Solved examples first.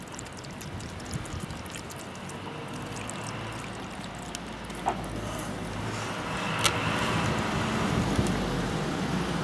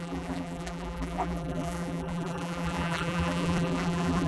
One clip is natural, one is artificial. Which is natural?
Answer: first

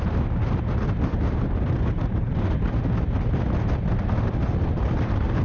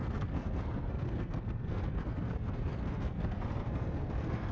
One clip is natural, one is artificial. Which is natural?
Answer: first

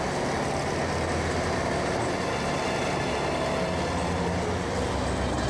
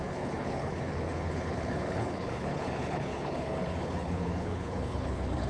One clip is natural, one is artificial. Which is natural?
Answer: first